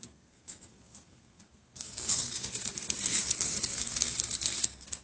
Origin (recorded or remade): remade